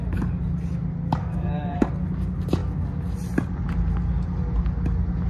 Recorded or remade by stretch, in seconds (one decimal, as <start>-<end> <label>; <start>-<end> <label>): 0.0-1.2 recorded; 1.2-1.9 remade; 1.9-5.3 recorded